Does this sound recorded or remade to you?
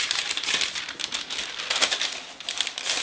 recorded